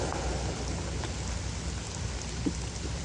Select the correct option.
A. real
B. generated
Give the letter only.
A